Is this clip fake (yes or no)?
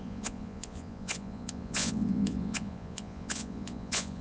yes